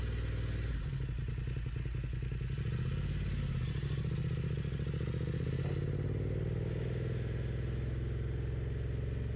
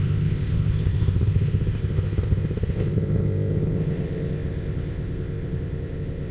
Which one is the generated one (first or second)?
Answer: second